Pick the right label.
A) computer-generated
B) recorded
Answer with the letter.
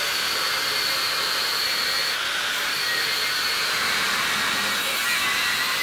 B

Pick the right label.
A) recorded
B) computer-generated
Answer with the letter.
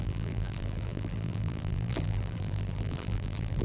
B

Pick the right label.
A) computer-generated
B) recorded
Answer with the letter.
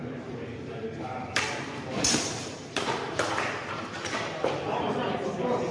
A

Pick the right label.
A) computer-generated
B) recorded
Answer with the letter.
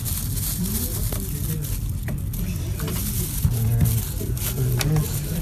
B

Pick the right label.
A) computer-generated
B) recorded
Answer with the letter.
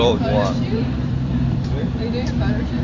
A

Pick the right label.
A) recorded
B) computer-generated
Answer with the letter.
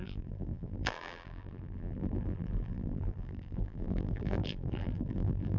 B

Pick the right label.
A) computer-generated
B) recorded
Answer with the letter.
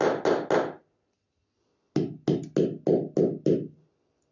B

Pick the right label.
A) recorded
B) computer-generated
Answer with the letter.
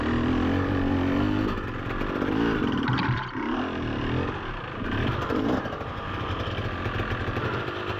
A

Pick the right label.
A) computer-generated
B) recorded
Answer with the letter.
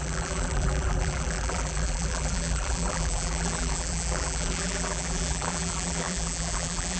A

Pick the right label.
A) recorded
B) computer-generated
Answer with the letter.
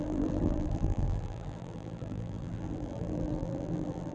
B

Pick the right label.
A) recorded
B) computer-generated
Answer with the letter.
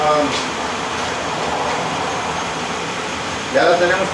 B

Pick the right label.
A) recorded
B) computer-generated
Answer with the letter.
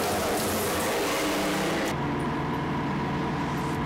A